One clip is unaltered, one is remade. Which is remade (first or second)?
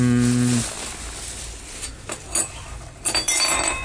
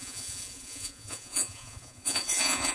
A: second